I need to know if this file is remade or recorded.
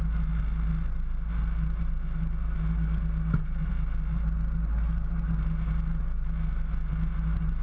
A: recorded